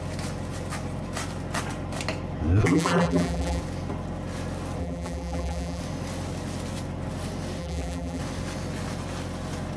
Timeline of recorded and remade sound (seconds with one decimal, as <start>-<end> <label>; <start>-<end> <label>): 0.0-2.6 recorded; 2.6-3.6 remade; 3.6-4.8 recorded; 4.8-5.8 remade; 5.8-7.6 recorded; 7.6-8.2 remade; 8.2-9.8 recorded